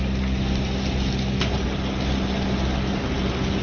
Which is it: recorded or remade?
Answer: recorded